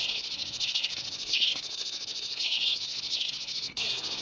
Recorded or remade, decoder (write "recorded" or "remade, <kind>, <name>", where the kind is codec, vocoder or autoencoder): remade, codec, SNAC